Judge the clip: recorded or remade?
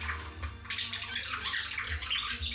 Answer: recorded